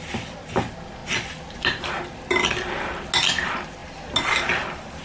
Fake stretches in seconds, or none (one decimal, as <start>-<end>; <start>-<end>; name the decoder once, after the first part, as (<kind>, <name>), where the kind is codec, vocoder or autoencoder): none